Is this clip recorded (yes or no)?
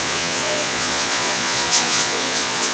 no